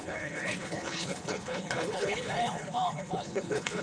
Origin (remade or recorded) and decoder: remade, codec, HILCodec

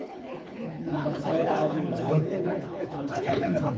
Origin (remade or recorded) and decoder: remade, codec, HILCodec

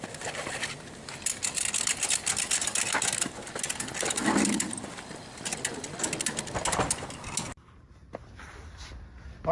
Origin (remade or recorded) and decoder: recorded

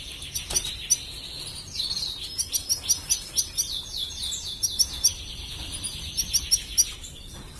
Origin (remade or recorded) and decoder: recorded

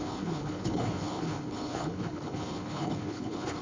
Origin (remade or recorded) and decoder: remade, codec, HILCodec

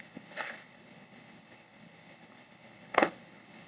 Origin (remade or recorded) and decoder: remade, codec, HILCodec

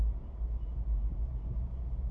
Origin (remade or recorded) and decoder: recorded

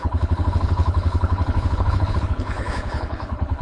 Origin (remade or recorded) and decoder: remade, codec, HILCodec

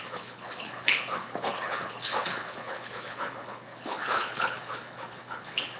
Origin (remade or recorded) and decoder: remade, codec, HILCodec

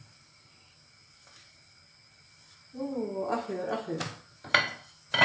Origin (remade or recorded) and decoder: recorded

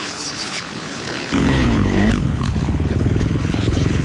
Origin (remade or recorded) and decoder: remade, codec, HILCodec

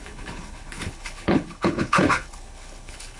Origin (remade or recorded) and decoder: remade, codec, HILCodec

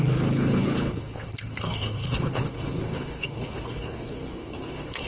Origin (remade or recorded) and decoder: remade, codec, HILCodec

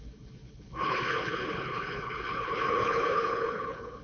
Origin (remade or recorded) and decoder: remade, codec, HILCodec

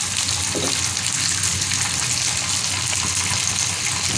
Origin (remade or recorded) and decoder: recorded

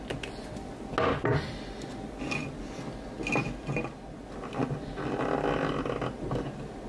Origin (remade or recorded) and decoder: recorded